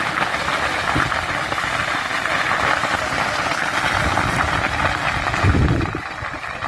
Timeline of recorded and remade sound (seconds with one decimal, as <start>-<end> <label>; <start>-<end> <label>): 0.0-6.7 recorded